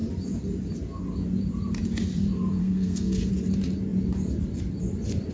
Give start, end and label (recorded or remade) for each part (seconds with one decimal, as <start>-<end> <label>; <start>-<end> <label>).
0.0-2.6 recorded; 2.6-3.3 remade; 3.3-5.3 recorded